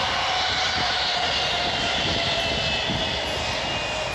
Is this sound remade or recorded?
recorded